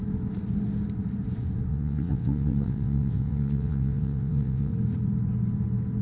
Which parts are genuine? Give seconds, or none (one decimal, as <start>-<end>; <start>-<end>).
0.0-1.7; 4.7-6.0